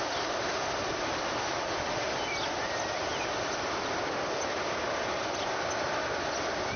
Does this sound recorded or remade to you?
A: recorded